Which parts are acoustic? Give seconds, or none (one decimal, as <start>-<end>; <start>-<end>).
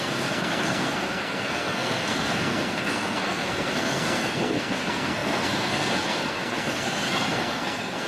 none